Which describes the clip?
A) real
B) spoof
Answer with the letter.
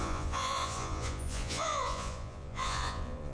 B